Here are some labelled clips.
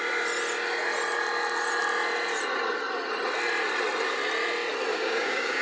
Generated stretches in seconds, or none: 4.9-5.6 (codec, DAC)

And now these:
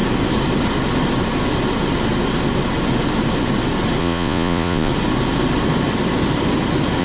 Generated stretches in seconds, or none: 4.0-4.9 (vocoder, Vocos)

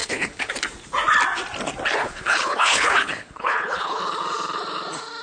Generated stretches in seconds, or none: 0.0-0.5 (codec, HILCodec); 2.0-4.0

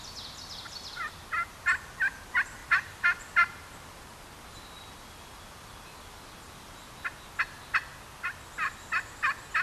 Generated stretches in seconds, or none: 2.6-4.0 (vocoder, BigVGAN v2)